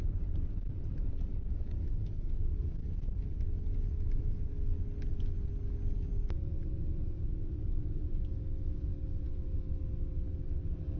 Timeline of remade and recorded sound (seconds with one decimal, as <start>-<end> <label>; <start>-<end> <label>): 0.0-11.0 recorded